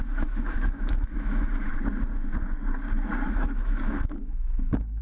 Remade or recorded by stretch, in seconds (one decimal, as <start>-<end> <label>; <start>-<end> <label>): 0.0-1.7 remade; 1.7-3.3 recorded; 3.3-5.0 remade